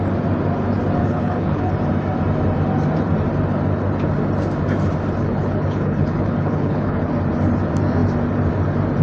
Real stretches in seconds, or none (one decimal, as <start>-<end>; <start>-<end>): 0.0-1.0; 1.7-5.2; 7.1-9.0